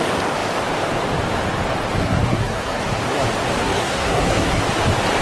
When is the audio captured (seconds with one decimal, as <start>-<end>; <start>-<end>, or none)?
0.0-2.0; 2.8-3.6; 4.6-5.2